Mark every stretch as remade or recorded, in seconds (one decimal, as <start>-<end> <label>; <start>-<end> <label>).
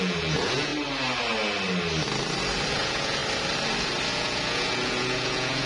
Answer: 0.0-0.7 remade; 0.7-2.7 recorded; 2.7-3.2 remade; 3.2-4.1 recorded; 4.1-5.7 remade